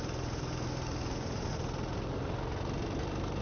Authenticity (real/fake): real